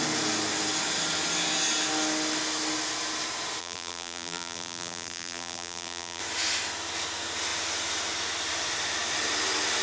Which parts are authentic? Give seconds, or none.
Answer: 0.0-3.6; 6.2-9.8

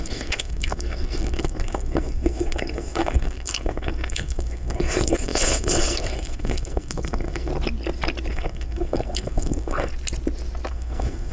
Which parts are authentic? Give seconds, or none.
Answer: 7.5-8.3; 9.9-10.7

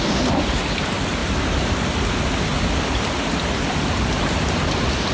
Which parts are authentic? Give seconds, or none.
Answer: 0.0-5.1

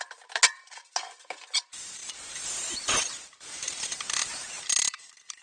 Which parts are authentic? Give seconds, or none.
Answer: none